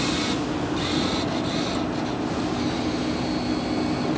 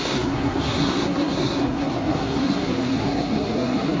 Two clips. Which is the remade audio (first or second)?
second